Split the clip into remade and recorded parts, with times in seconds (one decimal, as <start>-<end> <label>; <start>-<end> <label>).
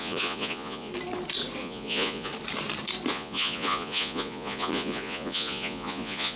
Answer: 0.0-0.9 remade; 0.9-1.6 recorded; 1.6-2.3 remade; 2.3-3.1 recorded; 3.1-6.4 remade